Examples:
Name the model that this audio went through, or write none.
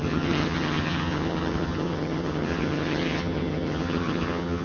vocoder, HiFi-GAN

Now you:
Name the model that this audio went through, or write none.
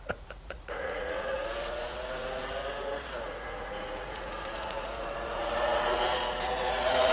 vocoder, Vocos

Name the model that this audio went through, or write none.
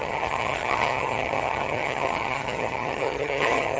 vocoder, HiFi-GAN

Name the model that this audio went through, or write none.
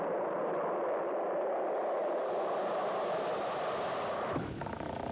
none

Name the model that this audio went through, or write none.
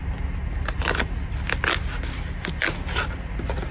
none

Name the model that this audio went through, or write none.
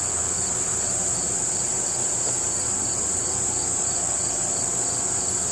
vocoder, BigVGAN v2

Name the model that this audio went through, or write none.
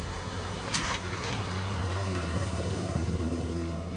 codec, SNAC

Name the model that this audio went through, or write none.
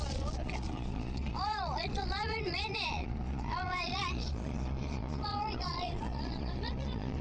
vocoder, Vocos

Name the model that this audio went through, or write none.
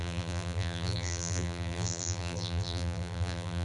vocoder, BigVGAN v2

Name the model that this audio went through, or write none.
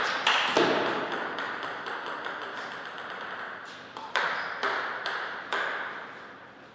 none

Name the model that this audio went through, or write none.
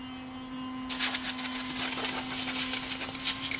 none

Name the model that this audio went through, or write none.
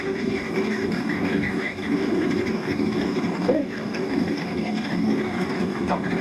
codec, DAC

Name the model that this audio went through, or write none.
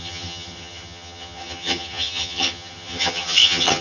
vocoder, HiFi-GAN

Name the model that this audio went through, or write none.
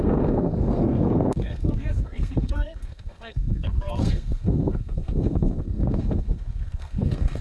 codec, SNAC